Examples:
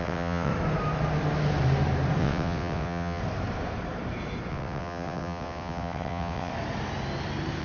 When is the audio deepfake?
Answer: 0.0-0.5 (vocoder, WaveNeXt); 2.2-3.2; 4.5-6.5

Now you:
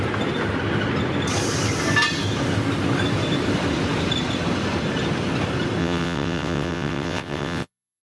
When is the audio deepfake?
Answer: 5.8-8.0 (vocoder, WaveNeXt)

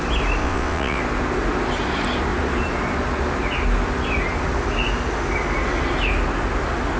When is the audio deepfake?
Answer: 0.4-1.0 (vocoder, WaveNeXt)

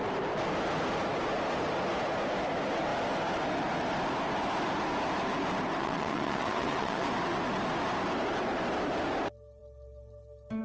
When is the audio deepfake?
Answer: 5.8-7.1 (vocoder, WaveNeXt)

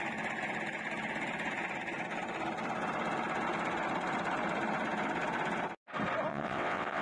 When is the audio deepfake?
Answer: 6.3-7.0 (vocoder, WaveNeXt)

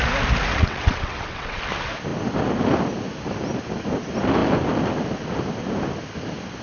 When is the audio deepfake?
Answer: 0.5-1.6 (vocoder, WaveNeXt)

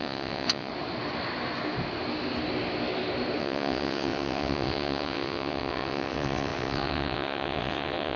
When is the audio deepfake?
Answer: 0.0-0.7 (vocoder, WaveNeXt); 3.4-8.2